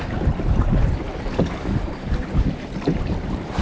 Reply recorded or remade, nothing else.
recorded